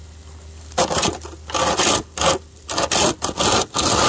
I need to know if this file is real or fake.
real